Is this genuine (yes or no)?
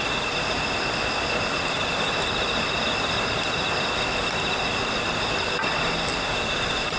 yes